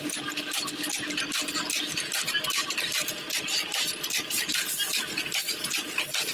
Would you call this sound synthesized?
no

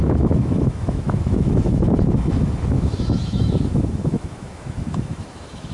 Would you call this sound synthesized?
yes